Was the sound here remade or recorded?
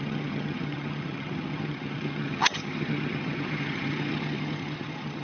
remade